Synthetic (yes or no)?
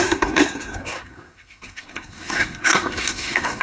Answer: yes